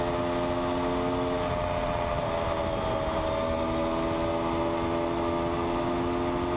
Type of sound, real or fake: real